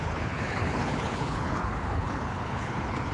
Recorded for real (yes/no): no